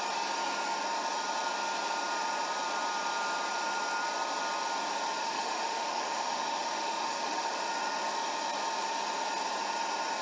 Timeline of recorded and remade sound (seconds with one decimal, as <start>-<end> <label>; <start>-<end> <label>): 0.0-5.2 recorded; 5.2-7.6 remade; 7.6-10.2 recorded